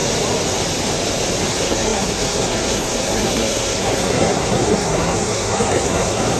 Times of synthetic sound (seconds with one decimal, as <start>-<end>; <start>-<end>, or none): 1.5-6.4